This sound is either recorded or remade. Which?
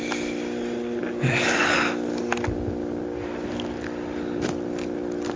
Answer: recorded